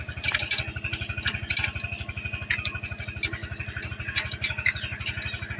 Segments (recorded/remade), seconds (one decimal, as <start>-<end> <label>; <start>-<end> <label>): 0.0-5.6 recorded